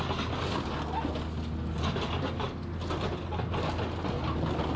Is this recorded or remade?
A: recorded